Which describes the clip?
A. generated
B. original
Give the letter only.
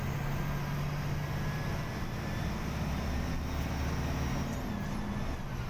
B